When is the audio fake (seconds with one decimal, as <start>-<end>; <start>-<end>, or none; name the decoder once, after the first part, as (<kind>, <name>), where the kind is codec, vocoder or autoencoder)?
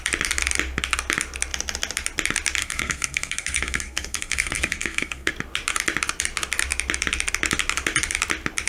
2.6-5.3 (codec, SNAC)